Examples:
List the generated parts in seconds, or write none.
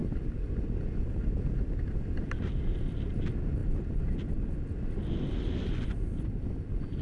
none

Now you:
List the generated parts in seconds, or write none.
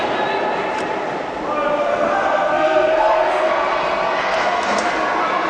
1.9-3.5 (codec, SNAC); 4.2-4.9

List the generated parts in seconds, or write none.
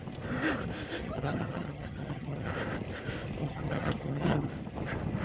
1.0-2.5 (vocoder, HiFi-GAN); 3.4-4.5